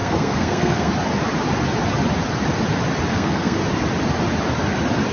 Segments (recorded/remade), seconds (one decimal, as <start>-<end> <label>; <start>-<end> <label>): 0.0-0.9 remade; 0.9-3.1 recorded; 3.1-3.6 remade; 3.6-5.1 recorded